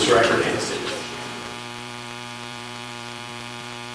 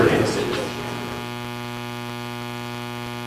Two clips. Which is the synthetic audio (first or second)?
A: first